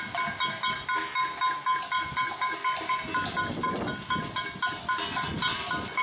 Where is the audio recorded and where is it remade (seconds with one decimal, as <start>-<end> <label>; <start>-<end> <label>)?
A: 0.0-6.0 recorded